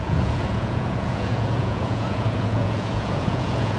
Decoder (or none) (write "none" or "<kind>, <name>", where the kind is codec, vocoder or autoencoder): vocoder, Vocos